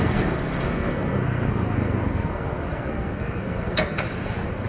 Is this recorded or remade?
remade